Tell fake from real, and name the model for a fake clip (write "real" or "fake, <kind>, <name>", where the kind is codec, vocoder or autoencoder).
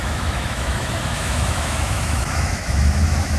fake, autoencoder, DAC-VAE